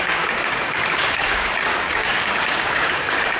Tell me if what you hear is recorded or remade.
remade